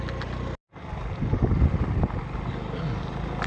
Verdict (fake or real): real